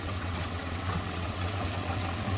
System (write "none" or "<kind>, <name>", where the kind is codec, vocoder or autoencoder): vocoder, WaveNeXt